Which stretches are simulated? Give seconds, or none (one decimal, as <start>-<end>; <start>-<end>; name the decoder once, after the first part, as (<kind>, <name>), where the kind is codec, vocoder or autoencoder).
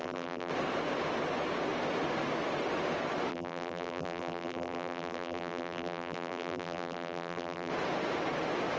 0.0-0.5 (vocoder, BigVGAN v2); 3.3-7.7